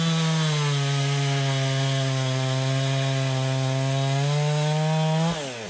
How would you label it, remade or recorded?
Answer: recorded